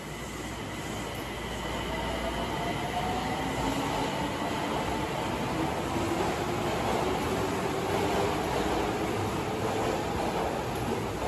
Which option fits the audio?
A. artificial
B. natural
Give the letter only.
B